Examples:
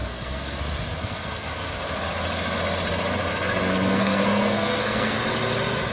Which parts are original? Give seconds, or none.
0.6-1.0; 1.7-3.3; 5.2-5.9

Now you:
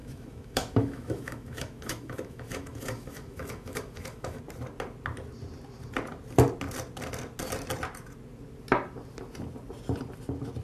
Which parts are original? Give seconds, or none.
4.4-10.6